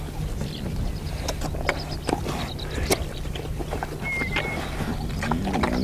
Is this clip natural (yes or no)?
yes